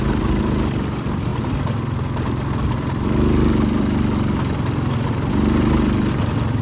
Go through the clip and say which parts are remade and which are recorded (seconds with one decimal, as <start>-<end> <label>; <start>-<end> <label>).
0.0-6.6 remade